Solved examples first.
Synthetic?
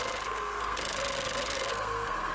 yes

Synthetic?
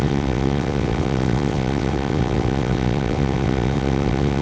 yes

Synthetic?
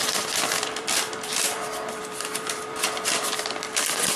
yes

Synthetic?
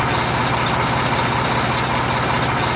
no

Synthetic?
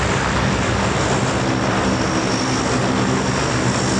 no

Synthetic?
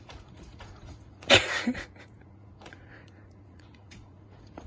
yes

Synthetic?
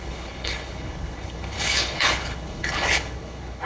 yes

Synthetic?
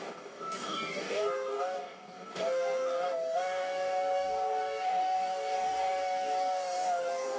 yes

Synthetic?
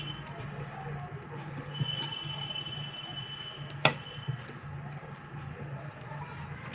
no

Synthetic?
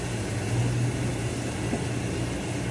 no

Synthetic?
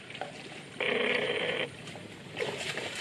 yes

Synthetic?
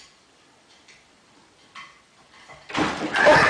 no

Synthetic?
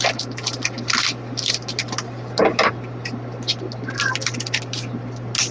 no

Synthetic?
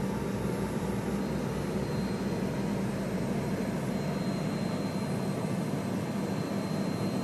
no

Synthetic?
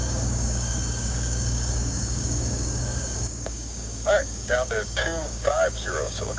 yes